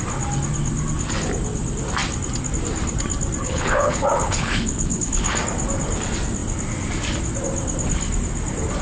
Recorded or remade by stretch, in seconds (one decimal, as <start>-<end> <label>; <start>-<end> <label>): 0.0-3.4 recorded; 3.4-5.3 remade; 5.3-8.8 recorded